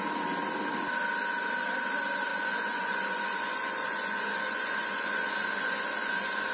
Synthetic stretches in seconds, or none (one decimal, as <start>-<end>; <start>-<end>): 2.3-6.5